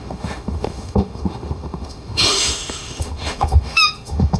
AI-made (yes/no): yes